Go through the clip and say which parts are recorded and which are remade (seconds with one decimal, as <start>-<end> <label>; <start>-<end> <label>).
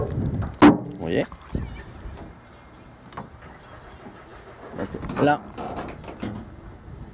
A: 0.0-7.1 recorded